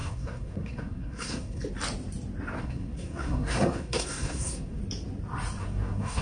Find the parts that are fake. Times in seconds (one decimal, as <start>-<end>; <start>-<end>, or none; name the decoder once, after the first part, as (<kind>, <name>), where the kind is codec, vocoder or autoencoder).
0.0-1.6 (codec, SNAC); 2.6-4.8; 5.6-6.2